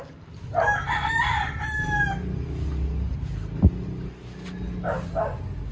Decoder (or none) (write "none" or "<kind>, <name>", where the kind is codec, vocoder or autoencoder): none